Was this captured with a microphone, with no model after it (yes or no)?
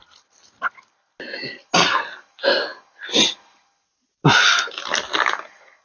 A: yes